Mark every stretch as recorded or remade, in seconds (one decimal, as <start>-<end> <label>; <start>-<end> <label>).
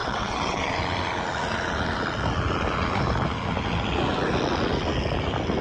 0.0-0.7 remade; 0.7-5.6 recorded